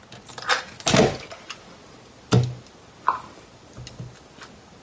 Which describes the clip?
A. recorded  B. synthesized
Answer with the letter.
A